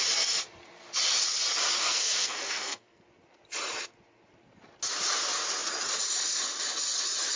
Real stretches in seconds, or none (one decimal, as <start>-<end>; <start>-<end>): 0.0-1.8; 3.0-7.4